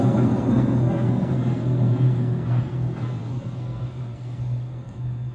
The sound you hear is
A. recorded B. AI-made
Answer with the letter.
B